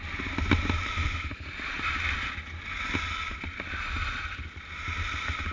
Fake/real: real